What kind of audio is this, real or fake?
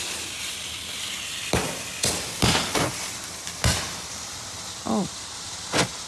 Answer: fake